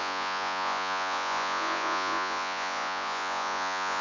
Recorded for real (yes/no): no